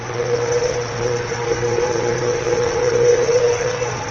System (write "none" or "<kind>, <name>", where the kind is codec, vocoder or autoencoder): vocoder, WaveNeXt